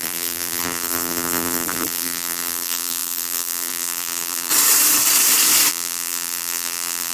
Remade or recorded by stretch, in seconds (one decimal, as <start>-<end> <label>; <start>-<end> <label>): 0.0-4.5 remade; 4.5-5.7 recorded; 5.7-7.1 remade